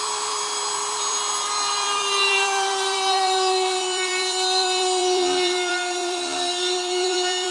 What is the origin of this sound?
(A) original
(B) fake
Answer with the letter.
B